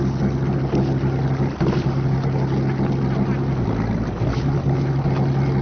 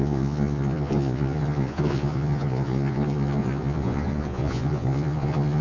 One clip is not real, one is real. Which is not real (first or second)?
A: second